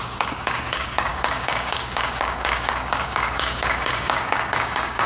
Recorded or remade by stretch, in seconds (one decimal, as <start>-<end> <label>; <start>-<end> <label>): 0.0-5.1 remade